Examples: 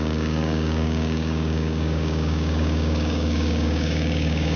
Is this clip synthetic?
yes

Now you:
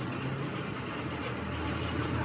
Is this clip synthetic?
no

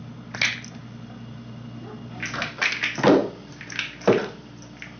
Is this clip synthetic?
no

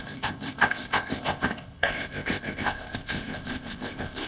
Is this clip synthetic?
yes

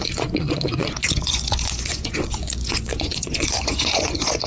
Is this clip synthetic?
yes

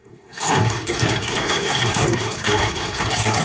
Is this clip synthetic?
yes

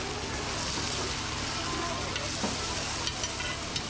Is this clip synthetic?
no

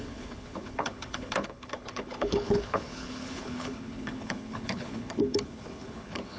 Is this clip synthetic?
yes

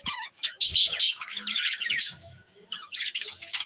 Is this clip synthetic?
yes